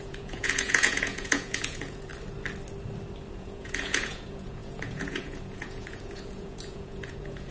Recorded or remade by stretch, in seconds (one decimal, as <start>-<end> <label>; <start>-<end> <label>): 0.0-2.1 remade; 2.1-3.3 recorded; 3.3-7.5 remade